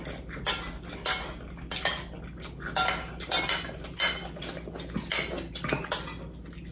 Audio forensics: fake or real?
real